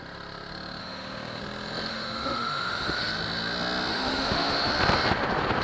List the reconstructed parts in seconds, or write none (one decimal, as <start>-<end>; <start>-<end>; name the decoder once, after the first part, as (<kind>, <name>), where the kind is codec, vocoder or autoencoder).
0.8-1.4 (autoencoder, DAC-VAE); 1.9-3.1; 3.9-4.7

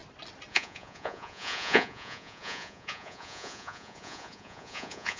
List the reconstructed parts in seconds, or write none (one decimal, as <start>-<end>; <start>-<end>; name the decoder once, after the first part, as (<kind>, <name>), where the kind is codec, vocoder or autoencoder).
0.5-5.2 (vocoder, Vocos)

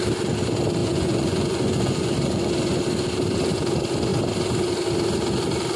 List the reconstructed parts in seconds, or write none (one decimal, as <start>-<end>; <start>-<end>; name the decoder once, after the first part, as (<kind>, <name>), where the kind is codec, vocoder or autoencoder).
0.8-2.8 (vocoder, Vocos)

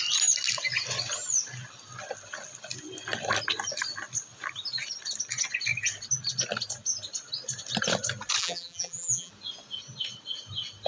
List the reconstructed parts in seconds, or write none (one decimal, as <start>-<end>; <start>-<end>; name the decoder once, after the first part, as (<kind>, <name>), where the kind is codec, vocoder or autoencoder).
8.4-9.3 (vocoder, BigVGAN v2)

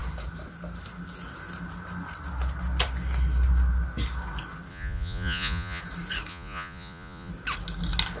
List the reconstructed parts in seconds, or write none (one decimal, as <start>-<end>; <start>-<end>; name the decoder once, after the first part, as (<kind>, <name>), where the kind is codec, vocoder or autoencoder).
4.7-5.8 (vocoder, Vocos); 6.3-7.3

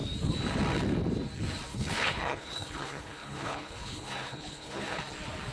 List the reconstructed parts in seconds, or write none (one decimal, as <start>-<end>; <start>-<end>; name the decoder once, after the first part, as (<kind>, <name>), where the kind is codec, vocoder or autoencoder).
1.7-5.0 (codec, HILCodec)

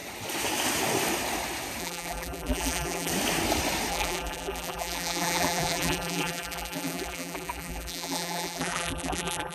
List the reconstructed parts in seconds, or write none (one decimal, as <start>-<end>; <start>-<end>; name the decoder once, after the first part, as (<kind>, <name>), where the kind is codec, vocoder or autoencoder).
1.8-3.1 (vocoder, BigVGAN v2); 3.9-9.5